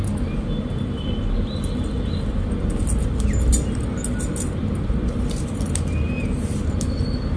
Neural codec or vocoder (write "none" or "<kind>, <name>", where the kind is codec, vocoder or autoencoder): none